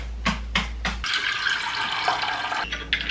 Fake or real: real